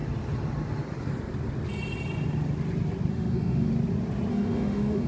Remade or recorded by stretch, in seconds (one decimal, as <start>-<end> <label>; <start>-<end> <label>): 0.0-3.1 recorded; 3.1-3.7 remade; 3.7-4.3 recorded; 4.3-5.1 remade